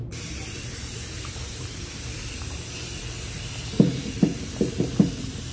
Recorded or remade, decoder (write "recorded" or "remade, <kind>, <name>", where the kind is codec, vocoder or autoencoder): remade, vocoder, BigVGAN v2